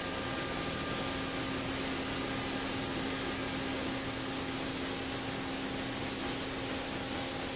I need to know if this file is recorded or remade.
recorded